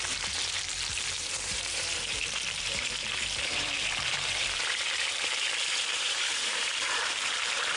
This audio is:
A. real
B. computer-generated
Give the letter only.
B